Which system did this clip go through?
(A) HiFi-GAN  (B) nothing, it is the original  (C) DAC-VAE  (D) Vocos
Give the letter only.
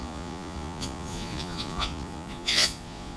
D